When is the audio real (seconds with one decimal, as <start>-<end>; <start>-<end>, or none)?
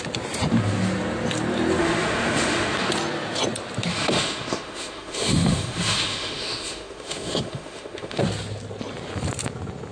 0.0-1.8; 2.9-3.9; 8.2-9.9